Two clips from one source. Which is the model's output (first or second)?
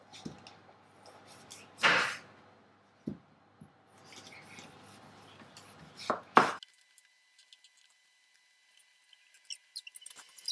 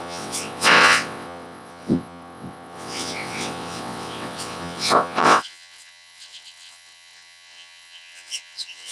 second